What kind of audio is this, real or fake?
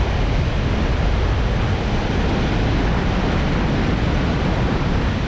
real